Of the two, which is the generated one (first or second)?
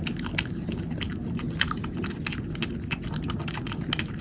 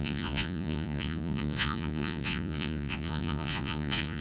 second